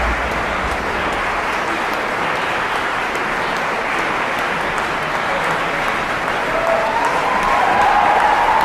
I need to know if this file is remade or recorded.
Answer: recorded